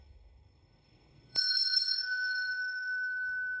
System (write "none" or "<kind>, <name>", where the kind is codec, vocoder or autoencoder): codec, SNAC